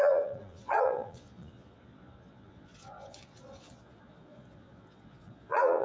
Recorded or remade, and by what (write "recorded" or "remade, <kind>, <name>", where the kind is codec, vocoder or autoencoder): remade, vocoder, Vocos